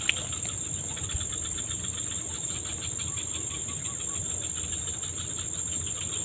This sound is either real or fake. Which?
real